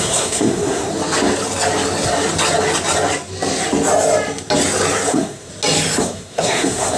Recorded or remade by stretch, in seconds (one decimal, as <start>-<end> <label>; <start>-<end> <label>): 0.0-0.9 remade; 0.9-5.1 recorded; 5.1-5.5 remade; 5.5-6.0 recorded; 6.0-7.0 remade

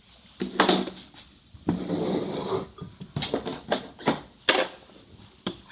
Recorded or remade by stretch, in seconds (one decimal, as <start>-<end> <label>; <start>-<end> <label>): 0.0-5.7 recorded

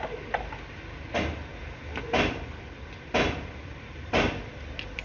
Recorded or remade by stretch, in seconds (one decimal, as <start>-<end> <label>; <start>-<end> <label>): 0.0-5.0 recorded

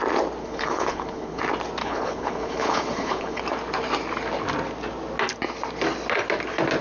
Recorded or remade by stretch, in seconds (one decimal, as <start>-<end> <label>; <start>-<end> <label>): 0.0-0.4 recorded; 0.4-1.4 remade; 1.4-1.8 recorded; 1.8-3.4 remade; 3.4-6.8 recorded

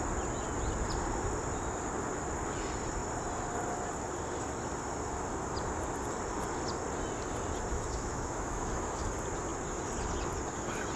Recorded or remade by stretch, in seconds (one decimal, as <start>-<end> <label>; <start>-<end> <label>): 0.0-7.7 recorded; 7.7-9.1 remade; 9.1-11.0 recorded

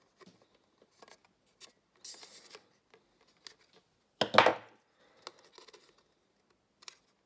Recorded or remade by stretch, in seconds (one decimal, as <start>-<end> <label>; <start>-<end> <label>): 0.0-7.3 recorded

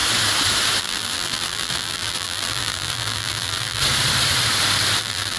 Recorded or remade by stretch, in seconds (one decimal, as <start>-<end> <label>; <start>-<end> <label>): 0.0-0.8 recorded; 0.8-3.8 remade; 3.8-5.0 recorded; 5.0-5.4 remade